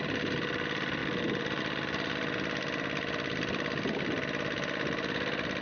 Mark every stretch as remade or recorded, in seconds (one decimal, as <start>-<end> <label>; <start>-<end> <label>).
0.0-1.0 recorded; 1.0-1.6 remade; 1.6-5.6 recorded